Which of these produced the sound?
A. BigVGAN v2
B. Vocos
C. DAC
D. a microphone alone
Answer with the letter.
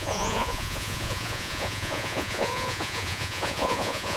B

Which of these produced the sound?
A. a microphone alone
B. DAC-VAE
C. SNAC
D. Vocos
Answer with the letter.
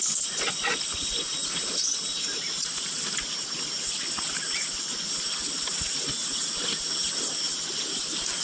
A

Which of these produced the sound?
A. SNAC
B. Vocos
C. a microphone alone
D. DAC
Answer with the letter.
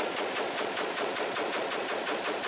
B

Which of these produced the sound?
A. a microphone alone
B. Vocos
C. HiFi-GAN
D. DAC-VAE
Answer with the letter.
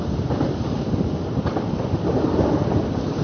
A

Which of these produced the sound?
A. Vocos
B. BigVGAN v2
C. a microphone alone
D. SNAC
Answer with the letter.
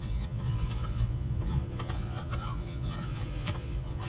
A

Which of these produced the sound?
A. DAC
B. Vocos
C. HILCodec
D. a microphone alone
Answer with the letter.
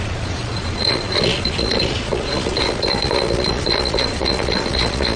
B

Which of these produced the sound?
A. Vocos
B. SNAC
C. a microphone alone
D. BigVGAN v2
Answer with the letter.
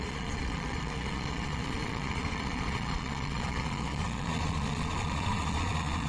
A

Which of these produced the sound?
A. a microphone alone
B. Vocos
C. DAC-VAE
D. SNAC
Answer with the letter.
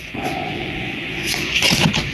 B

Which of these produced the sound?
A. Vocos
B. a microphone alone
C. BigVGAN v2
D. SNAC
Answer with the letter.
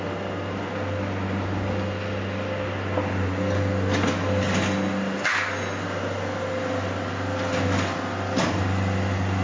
B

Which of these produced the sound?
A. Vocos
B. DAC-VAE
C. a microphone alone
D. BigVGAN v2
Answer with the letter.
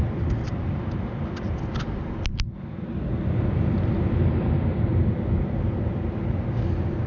C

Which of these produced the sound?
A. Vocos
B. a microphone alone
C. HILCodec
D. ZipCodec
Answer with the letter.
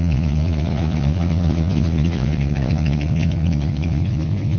A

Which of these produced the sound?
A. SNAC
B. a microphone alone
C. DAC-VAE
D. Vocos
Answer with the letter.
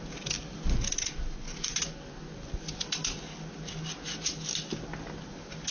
B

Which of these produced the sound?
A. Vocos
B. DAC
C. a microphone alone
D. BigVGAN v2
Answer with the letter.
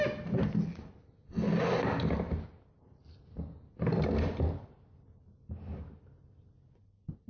C